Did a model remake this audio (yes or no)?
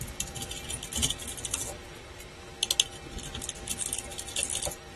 no